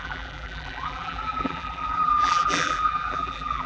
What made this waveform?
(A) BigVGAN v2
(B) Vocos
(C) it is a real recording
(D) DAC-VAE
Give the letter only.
A